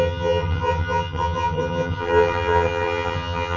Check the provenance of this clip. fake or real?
fake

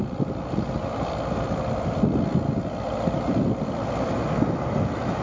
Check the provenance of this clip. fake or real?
real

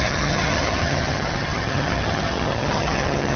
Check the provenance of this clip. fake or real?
fake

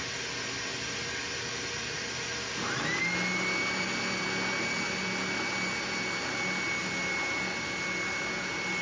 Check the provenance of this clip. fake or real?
real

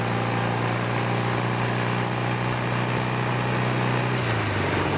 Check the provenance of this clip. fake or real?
real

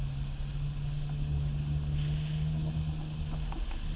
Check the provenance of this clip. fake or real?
real